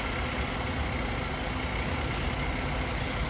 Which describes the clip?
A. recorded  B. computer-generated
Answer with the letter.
A